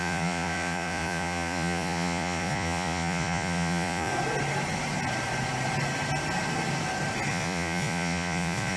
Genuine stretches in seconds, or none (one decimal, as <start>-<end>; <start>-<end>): 4.1-7.3